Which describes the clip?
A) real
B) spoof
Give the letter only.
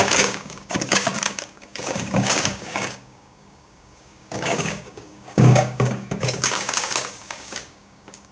B